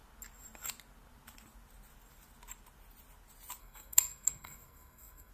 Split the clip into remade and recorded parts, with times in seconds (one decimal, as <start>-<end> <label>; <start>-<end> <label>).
0.0-3.6 recorded; 3.6-5.3 remade